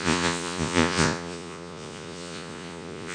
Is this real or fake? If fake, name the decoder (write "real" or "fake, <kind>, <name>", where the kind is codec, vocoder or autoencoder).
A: fake, vocoder, Vocos